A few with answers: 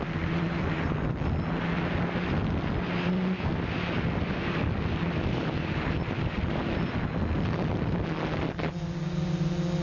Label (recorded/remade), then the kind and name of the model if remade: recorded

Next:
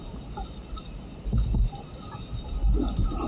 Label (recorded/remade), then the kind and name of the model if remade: recorded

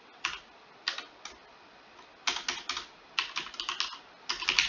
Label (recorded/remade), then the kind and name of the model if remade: recorded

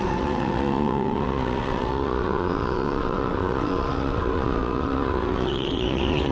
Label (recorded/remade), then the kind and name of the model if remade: remade, vocoder, WaveNeXt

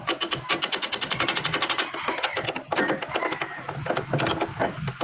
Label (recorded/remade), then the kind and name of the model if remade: recorded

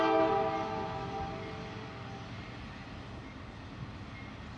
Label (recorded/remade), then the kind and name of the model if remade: recorded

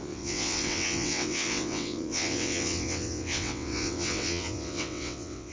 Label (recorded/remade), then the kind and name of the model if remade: remade, vocoder, WaveNeXt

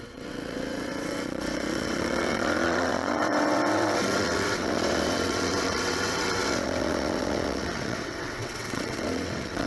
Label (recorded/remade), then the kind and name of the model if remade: remade, vocoder, WaveNeXt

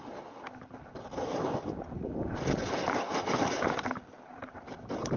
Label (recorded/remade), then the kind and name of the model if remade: recorded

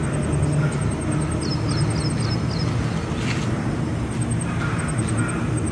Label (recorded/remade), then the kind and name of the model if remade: recorded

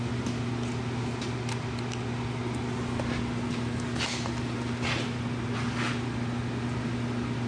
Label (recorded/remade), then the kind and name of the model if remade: recorded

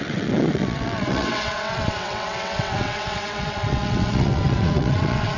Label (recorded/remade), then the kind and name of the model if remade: remade, vocoder, WaveNeXt